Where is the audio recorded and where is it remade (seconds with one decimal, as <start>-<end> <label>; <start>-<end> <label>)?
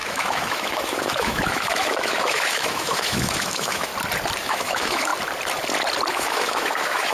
0.0-3.9 remade; 3.9-4.4 recorded; 4.4-5.1 remade; 5.1-6.1 recorded; 6.1-7.1 remade